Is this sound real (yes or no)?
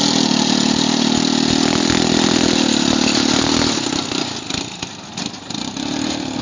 yes